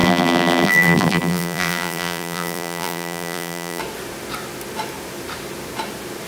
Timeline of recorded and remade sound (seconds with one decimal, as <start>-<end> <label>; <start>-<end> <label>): 0.0-3.8 remade; 3.8-6.3 recorded